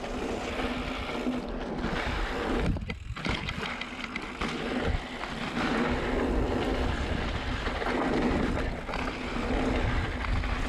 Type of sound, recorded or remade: recorded